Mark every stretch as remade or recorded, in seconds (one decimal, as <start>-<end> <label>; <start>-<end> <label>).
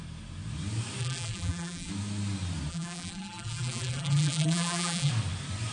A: 0.0-1.0 recorded; 1.0-1.9 remade; 1.9-2.7 recorded; 2.7-5.1 remade; 5.1-5.7 recorded